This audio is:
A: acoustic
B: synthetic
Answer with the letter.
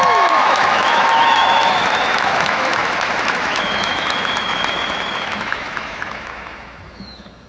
B